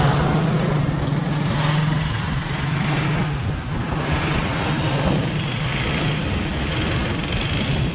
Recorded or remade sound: recorded